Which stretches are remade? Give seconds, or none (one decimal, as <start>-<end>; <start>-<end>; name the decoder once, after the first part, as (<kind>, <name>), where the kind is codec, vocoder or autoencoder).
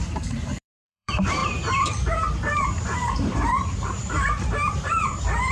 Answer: 0.0-5.5 (vocoder, BigVGAN v2)